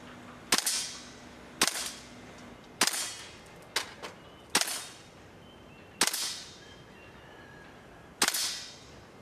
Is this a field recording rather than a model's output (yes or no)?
yes